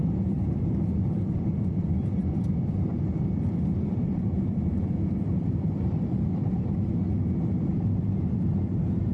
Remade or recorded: remade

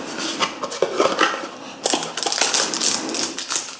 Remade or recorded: recorded